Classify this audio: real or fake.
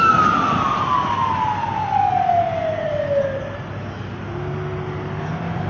real